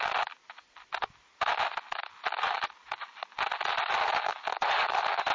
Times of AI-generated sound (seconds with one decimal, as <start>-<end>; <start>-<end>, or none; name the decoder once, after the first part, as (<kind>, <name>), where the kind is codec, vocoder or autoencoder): none